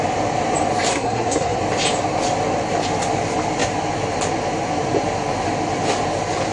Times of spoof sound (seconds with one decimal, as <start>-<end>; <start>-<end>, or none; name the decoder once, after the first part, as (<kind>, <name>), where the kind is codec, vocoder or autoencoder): 0.9-1.6 (codec, SNAC)